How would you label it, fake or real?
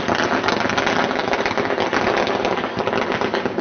real